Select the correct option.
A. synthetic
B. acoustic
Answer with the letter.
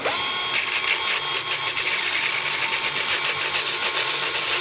B